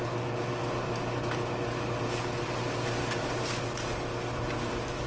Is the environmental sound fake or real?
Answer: real